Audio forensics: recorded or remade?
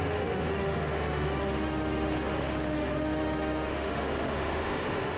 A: remade